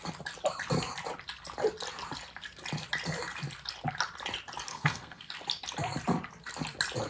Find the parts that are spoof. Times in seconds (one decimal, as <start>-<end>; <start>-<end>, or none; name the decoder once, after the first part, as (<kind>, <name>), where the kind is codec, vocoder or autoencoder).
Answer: 4.7-5.3 (codec, SNAC)